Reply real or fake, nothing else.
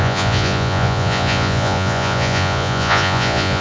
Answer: fake